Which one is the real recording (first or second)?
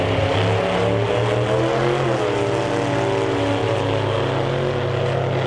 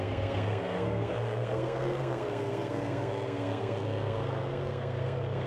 first